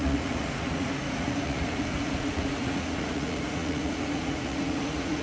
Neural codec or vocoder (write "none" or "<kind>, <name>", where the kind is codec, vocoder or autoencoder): vocoder, Vocos